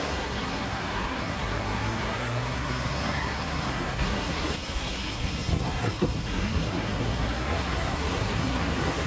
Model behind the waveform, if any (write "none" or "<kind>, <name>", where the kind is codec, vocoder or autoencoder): codec, SNAC